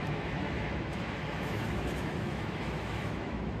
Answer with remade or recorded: remade